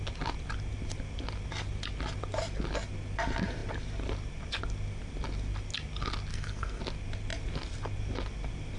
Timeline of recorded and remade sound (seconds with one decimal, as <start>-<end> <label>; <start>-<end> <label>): 0.0-6.3 recorded; 6.3-6.8 remade; 6.8-8.8 recorded